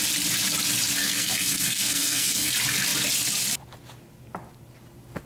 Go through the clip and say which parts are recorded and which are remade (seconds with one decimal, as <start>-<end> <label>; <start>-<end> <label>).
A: 0.0-1.0 recorded; 1.0-2.5 remade; 2.5-5.3 recorded